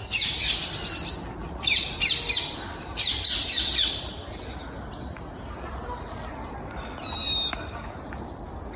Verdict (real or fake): real